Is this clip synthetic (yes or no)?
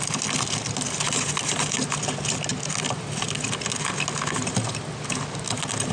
no